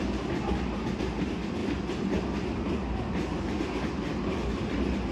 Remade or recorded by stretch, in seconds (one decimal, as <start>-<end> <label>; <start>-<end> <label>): 0.0-5.1 recorded